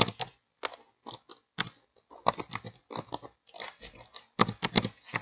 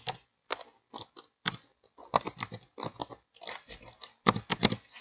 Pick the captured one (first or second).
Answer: first